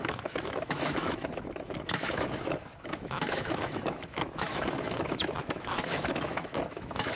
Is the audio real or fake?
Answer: fake